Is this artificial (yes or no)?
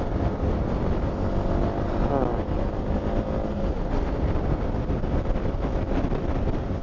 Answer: no